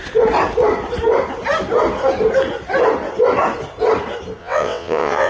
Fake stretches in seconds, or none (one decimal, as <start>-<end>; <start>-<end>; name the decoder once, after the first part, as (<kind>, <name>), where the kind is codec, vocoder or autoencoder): 4.4-5.3 (vocoder, WaveNeXt)